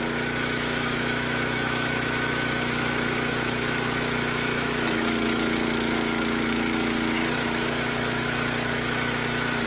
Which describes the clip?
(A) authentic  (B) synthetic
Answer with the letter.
B